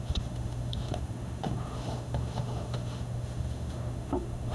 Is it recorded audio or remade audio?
remade